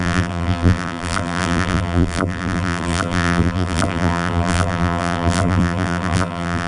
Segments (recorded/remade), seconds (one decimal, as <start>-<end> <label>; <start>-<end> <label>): 0.0-6.7 remade